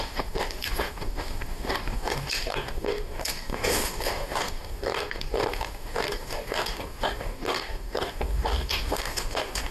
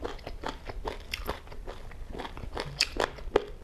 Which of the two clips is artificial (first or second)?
first